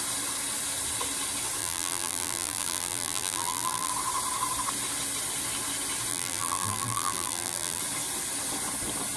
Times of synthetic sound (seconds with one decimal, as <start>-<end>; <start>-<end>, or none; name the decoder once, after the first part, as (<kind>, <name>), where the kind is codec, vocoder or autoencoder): 1.6-3.9 (vocoder, BigVGAN v2); 6.1-7.8